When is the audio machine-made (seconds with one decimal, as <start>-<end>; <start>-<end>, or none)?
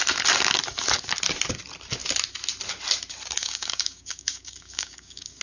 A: 3.4-5.4